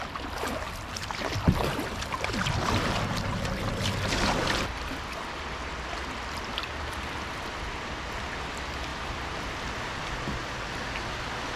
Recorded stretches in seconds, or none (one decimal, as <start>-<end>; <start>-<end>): 0.0-11.6